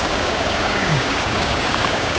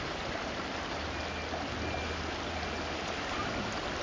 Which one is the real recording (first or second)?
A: second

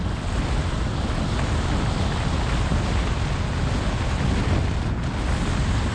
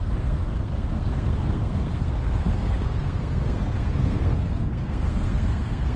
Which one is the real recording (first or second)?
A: first